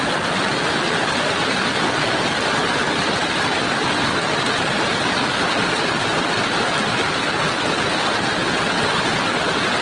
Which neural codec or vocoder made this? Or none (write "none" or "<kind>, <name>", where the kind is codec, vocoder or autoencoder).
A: none